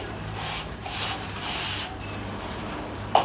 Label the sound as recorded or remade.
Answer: remade